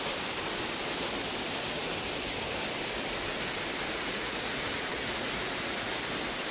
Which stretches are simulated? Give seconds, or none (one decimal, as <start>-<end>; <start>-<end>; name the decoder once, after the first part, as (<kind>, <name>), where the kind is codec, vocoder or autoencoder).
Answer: 3.9-5.9 (vocoder, Vocos)

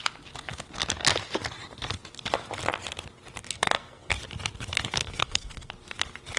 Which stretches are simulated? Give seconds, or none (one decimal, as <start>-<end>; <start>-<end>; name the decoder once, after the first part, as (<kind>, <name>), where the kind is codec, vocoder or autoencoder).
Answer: 3.4-4.1 (codec, SNAC); 5.0-5.7

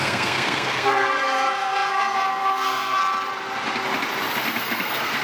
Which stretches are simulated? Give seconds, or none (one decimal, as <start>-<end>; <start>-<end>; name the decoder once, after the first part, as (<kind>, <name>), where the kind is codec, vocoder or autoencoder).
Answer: 0.0-3.0 (codec, SNAC); 4.6-5.2

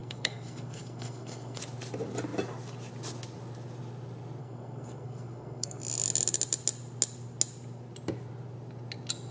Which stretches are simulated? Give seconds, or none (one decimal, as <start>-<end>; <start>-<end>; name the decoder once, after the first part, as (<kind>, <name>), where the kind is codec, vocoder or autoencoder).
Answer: 0.0-1.6 (codec, SNAC); 4.4-5.8